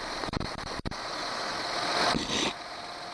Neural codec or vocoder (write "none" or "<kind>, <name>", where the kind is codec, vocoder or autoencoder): none